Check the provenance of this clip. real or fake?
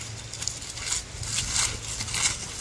real